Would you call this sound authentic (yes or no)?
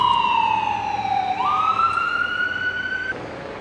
yes